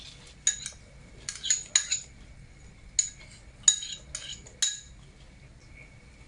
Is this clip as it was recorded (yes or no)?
yes